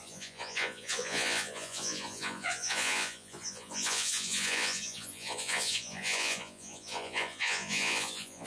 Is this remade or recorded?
remade